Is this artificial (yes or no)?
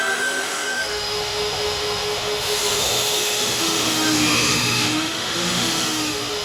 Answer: yes